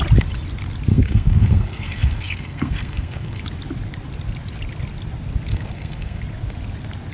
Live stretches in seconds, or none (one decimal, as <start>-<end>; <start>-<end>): 0.0-0.9; 3.4-5.5; 6.2-7.1